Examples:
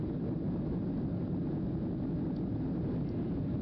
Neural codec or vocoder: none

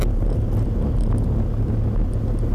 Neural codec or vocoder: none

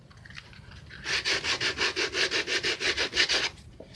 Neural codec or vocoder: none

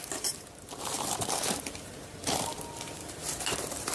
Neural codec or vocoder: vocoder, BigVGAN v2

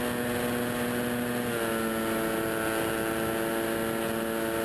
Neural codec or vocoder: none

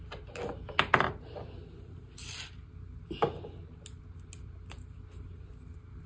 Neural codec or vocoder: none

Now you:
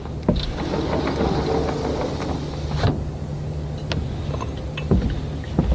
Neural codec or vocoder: none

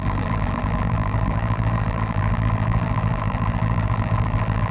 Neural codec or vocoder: vocoder, BigVGAN v2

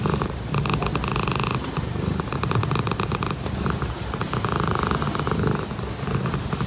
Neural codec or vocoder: vocoder, BigVGAN v2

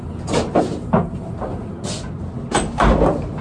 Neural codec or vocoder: none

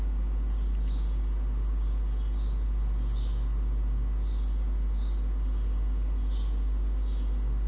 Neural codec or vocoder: none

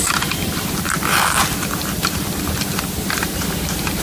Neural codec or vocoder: vocoder, BigVGAN v2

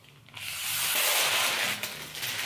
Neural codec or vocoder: none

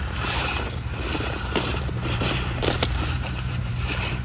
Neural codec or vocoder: vocoder, BigVGAN v2